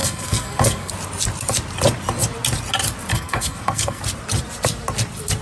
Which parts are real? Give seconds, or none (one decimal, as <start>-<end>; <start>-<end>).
0.9-3.1; 4.0-5.4

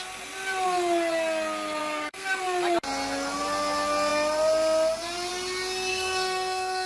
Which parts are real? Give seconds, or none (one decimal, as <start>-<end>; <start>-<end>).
0.0-1.8; 2.4-5.9